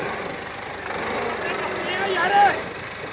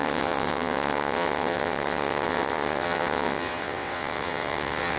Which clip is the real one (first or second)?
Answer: first